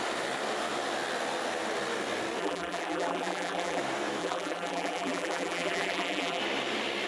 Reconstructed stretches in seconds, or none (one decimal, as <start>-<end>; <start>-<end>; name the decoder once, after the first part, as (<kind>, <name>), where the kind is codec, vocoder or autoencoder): 2.4-3.8 (vocoder, BigVGAN v2); 4.2-6.4